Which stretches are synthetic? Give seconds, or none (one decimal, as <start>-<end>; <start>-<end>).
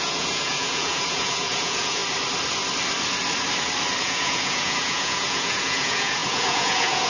0.0-2.0; 4.0-7.1